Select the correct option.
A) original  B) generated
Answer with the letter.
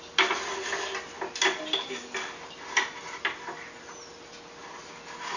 A